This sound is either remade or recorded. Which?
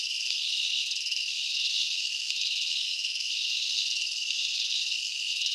remade